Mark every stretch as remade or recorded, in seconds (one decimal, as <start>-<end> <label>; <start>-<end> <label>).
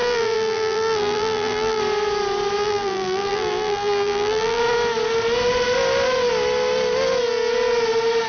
0.0-1.8 remade; 1.8-2.6 recorded; 2.6-4.6 remade; 4.6-8.3 recorded